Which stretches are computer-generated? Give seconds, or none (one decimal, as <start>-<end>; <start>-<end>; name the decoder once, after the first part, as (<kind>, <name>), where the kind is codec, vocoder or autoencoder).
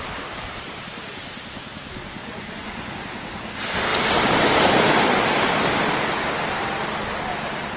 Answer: 2.2-2.9 (vocoder, Vocos)